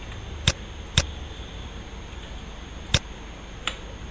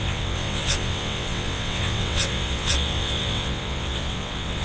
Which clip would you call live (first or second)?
first